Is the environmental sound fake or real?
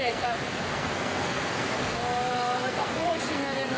fake